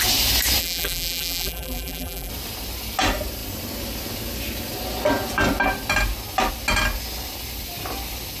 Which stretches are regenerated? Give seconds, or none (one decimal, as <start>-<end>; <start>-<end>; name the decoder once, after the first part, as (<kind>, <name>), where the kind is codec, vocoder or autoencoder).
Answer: 0.6-2.3 (vocoder, BigVGAN v2)